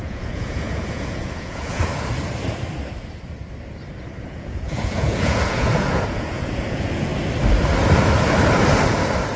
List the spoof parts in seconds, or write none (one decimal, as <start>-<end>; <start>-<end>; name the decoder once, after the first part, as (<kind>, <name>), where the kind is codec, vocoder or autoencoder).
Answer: 0.0-1.9 (vocoder, Vocos); 4.2-7.1